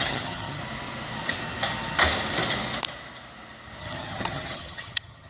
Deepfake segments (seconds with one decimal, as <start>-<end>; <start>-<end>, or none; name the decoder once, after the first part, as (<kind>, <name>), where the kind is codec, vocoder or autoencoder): 0.0-0.6 (vocoder, HiFi-GAN); 3.8-5.3